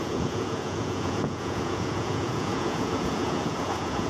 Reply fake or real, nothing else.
fake